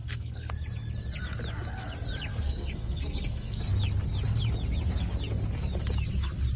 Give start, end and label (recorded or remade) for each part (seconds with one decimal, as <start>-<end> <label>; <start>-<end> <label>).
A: 0.0-0.5 remade; 0.5-2.3 recorded; 2.3-3.6 remade; 3.6-6.6 recorded

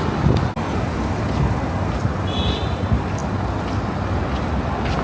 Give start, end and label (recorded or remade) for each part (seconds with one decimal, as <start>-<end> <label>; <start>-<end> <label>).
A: 0.0-5.0 recorded

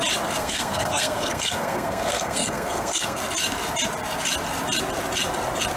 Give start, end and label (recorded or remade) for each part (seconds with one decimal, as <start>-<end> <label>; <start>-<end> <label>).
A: 0.0-0.4 recorded; 0.4-3.2 remade; 3.2-5.8 recorded

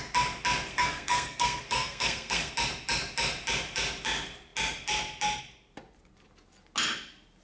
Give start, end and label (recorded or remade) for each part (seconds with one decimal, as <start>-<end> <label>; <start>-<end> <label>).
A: 0.0-0.7 recorded; 0.7-2.5 remade; 2.5-7.4 recorded

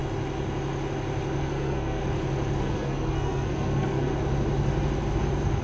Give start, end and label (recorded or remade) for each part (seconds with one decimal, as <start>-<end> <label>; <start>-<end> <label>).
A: 0.0-1.4 recorded; 1.4-2.0 remade; 2.0-2.6 recorded; 2.6-4.1 remade; 4.1-5.6 recorded

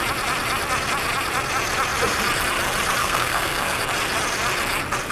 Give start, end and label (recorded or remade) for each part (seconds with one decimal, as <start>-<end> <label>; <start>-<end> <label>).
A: 0.0-3.0 recorded; 3.0-3.8 remade; 3.8-5.1 recorded